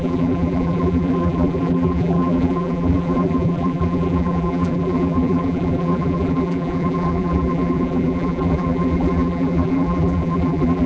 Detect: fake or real fake